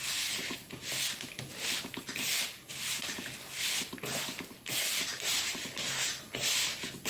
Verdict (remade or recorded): recorded